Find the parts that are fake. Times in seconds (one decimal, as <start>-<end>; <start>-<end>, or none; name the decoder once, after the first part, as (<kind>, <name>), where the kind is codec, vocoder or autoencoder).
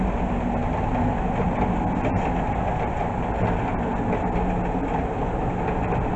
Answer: none